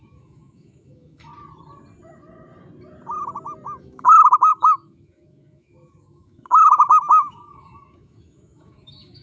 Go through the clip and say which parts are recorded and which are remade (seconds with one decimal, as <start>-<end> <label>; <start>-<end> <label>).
0.0-1.3 remade; 1.3-3.8 recorded; 3.8-9.2 remade